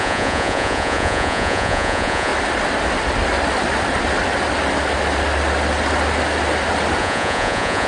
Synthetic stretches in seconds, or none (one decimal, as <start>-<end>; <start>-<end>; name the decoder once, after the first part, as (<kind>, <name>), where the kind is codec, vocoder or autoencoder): 0.0-2.3 (vocoder, Vocos); 7.0-7.9